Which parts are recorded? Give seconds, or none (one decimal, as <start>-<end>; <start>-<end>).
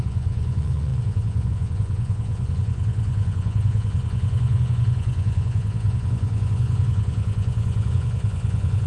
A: none